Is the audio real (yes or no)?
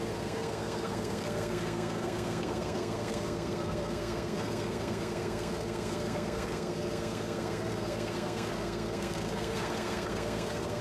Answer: no